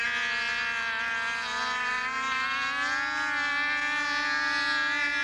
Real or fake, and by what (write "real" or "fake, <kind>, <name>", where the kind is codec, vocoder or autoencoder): real